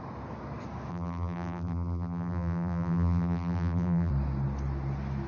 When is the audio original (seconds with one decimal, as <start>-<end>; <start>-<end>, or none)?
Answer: 0.0-0.9; 4.1-5.3